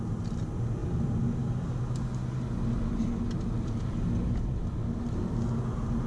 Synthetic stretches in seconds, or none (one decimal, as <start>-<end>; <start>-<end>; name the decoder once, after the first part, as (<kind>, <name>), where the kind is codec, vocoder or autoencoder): none

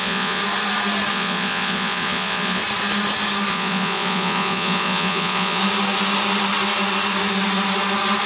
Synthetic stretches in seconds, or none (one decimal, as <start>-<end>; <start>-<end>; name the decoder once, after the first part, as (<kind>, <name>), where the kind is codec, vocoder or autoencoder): 0.0-0.4 (vocoder, Vocos); 1.1-2.6; 3.5-5.6

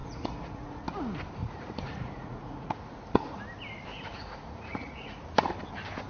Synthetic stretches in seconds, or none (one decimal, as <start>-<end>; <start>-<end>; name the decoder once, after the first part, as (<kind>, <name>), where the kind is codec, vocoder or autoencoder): 0.0-0.8 (vocoder, Vocos); 1.4-3.4; 3.9-5.2

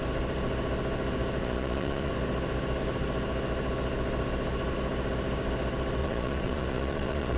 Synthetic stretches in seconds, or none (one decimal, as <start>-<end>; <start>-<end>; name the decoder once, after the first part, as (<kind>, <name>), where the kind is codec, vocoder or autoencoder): 1.4-2.1 (vocoder, Vocos); 6.0-7.4